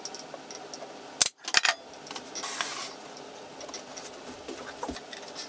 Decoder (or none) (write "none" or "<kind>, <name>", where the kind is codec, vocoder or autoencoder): none